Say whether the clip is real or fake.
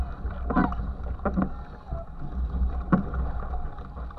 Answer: real